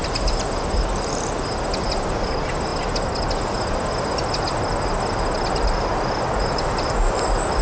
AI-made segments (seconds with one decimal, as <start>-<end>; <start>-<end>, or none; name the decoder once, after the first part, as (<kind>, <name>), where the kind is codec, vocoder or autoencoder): none